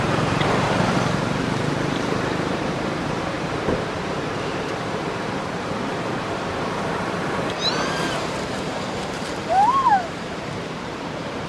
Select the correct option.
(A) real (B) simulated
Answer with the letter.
B